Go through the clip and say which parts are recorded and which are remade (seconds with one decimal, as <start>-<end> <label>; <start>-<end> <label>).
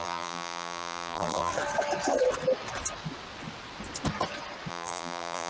0.0-1.5 remade; 1.5-4.7 recorded; 4.7-5.5 remade